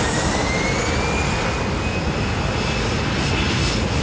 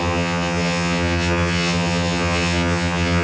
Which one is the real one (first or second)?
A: first